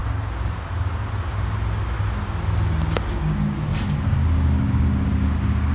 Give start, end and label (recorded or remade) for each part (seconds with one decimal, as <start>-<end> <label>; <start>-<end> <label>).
0.0-3.2 recorded; 3.2-5.7 remade

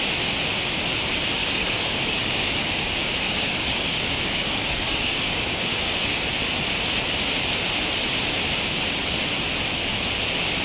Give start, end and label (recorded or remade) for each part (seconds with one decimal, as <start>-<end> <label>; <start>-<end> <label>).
0.0-1.4 recorded; 1.4-6.2 remade; 6.2-10.6 recorded